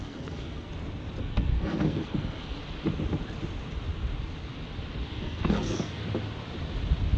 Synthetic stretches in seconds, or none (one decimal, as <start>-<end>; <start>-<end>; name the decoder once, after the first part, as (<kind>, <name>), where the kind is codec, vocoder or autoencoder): 0.0-0.7 (codec, SNAC); 1.2-2.6; 5.1-6.0